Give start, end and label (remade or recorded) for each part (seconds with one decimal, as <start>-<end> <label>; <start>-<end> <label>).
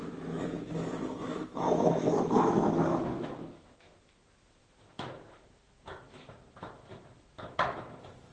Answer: 0.0-8.3 remade